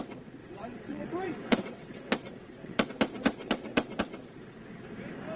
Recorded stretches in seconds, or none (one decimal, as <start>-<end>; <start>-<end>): 0.0-0.4; 2.9-3.4; 4.0-5.4